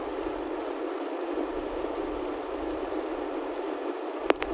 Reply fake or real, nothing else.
real